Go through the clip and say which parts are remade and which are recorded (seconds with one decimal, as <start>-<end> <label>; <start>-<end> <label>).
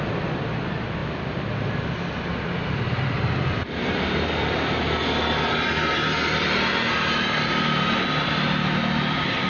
0.0-9.5 recorded